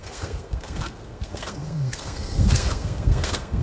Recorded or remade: remade